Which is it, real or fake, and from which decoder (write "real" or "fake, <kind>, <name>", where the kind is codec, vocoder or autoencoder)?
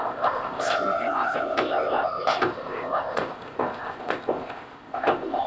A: fake, codec, ZipCodec